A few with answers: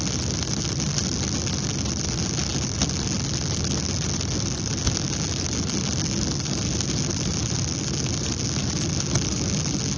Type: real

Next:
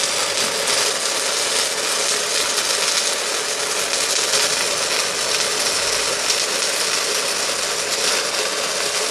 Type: real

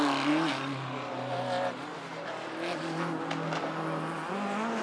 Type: real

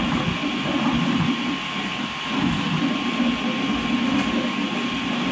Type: real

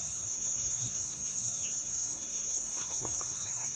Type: fake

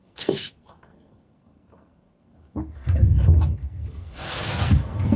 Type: fake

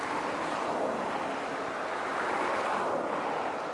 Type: real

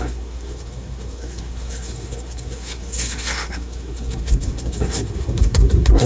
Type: fake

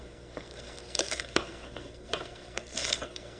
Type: fake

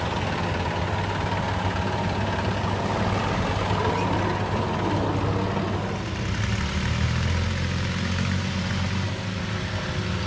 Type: real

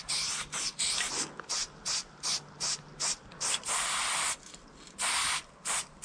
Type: real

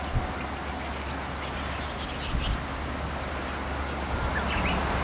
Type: real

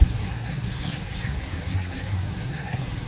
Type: fake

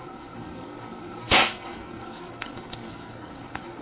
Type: fake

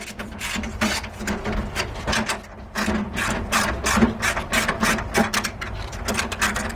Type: real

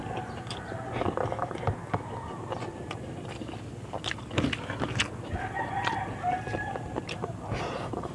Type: real